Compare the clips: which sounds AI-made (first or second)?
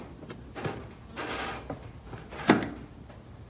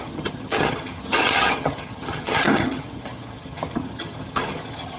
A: second